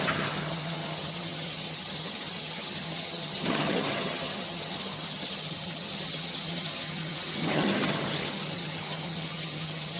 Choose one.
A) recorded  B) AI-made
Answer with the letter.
B